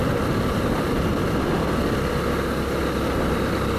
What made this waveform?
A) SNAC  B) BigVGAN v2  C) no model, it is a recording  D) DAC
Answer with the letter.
C